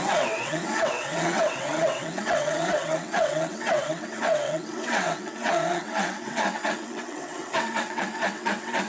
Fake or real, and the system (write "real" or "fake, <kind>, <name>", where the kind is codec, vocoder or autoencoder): fake, vocoder, WaveNeXt